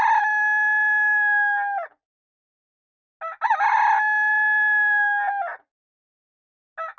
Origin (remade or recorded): recorded